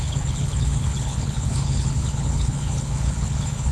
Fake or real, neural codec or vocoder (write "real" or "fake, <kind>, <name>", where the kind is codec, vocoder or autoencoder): fake, codec, HILCodec